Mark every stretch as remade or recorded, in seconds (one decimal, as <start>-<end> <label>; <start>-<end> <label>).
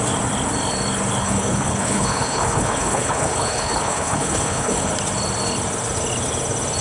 0.0-1.2 recorded; 1.2-4.9 remade; 4.9-6.8 recorded